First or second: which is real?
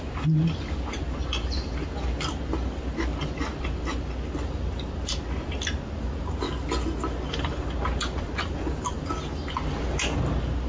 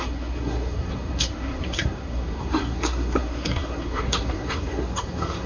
first